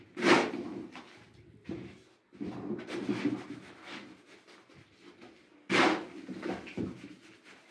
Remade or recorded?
recorded